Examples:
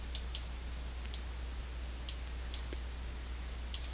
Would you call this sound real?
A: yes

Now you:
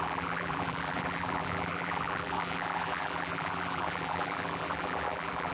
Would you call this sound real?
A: no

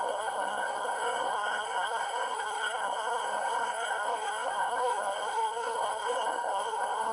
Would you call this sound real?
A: no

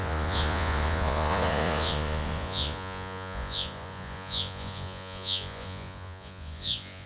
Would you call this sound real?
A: no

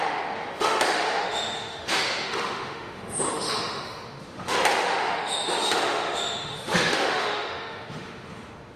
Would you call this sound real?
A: no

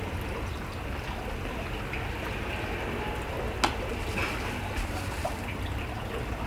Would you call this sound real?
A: yes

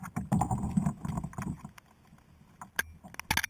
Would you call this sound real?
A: yes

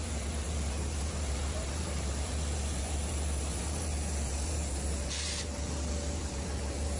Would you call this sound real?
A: no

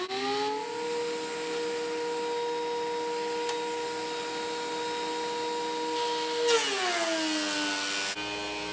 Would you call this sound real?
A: yes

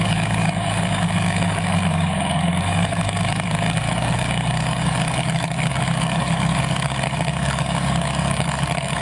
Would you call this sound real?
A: no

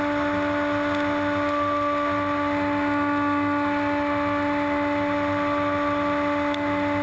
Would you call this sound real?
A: yes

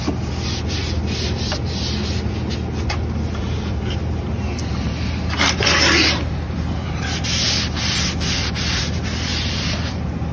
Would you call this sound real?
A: yes